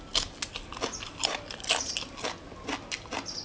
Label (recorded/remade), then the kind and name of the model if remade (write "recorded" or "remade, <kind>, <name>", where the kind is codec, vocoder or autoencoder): recorded